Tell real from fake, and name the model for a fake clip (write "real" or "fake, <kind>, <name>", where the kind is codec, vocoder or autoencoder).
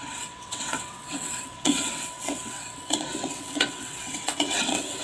fake, vocoder, WaveNeXt